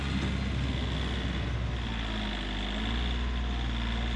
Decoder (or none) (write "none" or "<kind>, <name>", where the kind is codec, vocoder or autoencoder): none